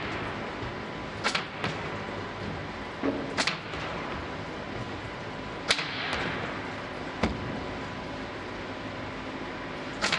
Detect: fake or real real